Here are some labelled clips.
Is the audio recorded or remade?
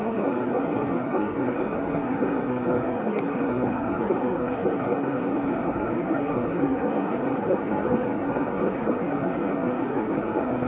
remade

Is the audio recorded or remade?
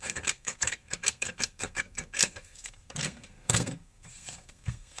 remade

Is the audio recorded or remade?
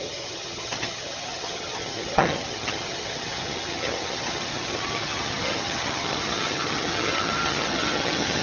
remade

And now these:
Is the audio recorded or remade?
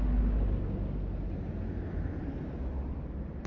recorded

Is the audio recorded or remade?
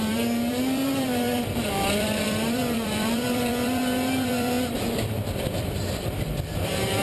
remade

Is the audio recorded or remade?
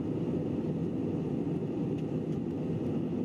recorded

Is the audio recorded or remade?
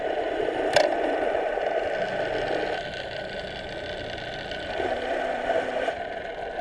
recorded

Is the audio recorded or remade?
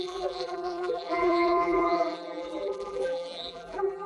remade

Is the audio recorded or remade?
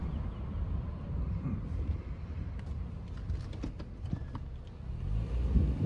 recorded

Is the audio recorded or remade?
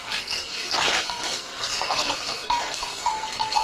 remade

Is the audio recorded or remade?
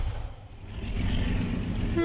recorded